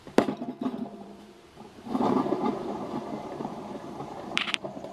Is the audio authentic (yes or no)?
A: no